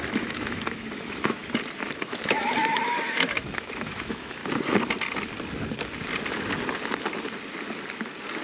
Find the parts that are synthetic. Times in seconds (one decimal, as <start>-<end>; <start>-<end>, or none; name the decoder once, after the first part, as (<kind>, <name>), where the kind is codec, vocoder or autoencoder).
0.0-1.4 (autoencoder, DAC-VAE); 2.0-4.4

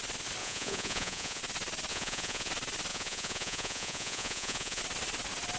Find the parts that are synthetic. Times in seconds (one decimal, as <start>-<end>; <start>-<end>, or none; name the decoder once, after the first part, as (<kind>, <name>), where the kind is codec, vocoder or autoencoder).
0.4-1.4 (vocoder, Vocos); 1.9-2.5; 2.9-4.8

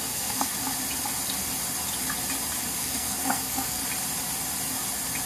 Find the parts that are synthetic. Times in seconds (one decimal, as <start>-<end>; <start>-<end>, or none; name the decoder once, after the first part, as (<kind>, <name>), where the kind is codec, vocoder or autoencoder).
0.0-0.5 (codec, SNAC); 2.8-3.8

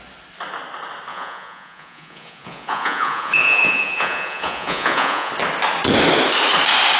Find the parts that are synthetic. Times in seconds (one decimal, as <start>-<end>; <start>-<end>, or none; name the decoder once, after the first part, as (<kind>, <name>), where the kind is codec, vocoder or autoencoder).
1.1-5.3 (vocoder, Vocos)

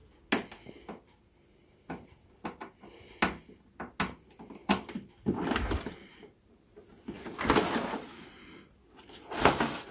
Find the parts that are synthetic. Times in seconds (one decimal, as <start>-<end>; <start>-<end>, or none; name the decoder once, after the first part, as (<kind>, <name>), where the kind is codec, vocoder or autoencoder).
4.6-6.8 (vocoder, BigVGAN v2)

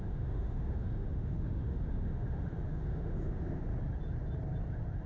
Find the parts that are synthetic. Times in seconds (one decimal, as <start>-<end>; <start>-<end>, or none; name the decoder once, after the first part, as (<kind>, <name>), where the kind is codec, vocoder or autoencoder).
0.0-3.7 (autoencoder, DAC-VAE)